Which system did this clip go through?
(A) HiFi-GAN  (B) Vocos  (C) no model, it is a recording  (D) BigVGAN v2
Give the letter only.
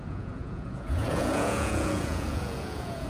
B